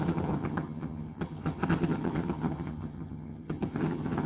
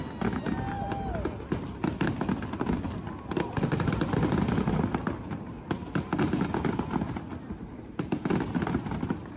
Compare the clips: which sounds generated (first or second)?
first